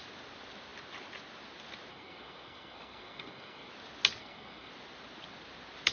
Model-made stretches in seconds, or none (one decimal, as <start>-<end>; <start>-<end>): 1.9-3.7; 4.2-4.7